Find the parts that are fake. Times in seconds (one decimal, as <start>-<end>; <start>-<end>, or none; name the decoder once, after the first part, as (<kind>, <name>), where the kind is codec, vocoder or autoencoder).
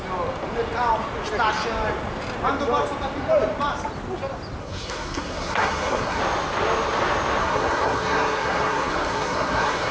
4.6-6.2 (codec, SNAC); 7.4-9.9